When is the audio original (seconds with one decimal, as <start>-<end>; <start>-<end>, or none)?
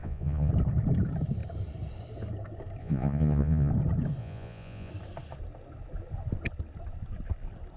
0.5-2.8; 3.7-4.2; 4.9-7.8